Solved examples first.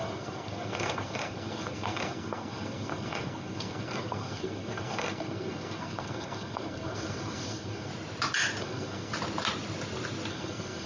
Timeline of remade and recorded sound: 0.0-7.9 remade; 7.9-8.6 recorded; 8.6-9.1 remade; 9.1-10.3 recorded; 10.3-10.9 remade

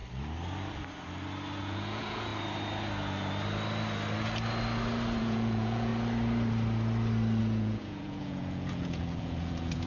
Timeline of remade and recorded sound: 0.0-1.6 recorded; 1.6-2.3 remade; 2.3-5.2 recorded; 5.2-5.9 remade; 5.9-7.4 recorded; 7.4-9.9 remade

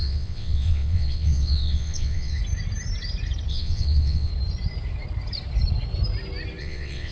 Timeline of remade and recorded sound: 0.0-2.4 remade; 2.4-3.5 recorded; 3.5-4.3 remade; 4.3-6.6 recorded; 6.6-7.1 remade